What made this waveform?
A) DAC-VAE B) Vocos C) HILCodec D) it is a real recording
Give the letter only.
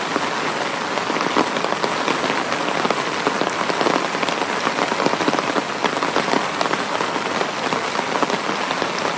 D